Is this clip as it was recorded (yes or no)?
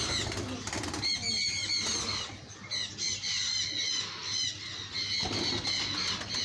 yes